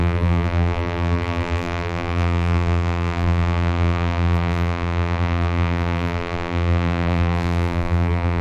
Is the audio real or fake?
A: fake